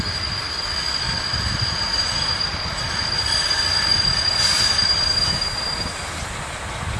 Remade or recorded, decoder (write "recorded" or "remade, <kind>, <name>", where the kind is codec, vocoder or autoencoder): recorded